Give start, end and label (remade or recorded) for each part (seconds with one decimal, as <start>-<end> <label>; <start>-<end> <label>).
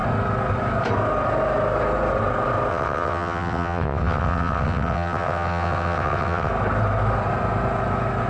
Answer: 0.0-2.7 recorded; 2.7-6.5 remade; 6.5-8.3 recorded